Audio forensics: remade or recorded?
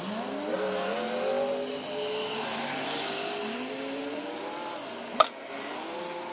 recorded